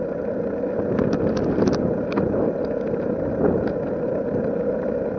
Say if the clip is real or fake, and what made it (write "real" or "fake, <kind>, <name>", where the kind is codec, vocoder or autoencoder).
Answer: real